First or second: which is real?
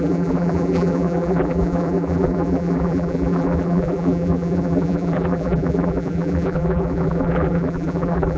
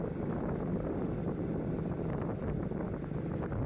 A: second